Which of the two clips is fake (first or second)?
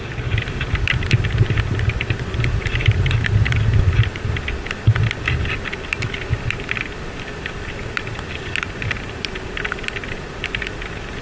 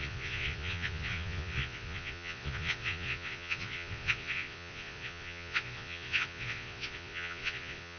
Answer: second